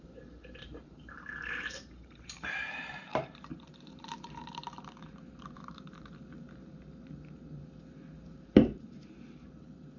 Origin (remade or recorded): remade